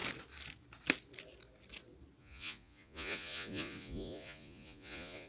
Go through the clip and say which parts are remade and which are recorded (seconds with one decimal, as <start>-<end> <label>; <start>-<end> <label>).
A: 0.0-2.2 recorded; 2.2-5.3 remade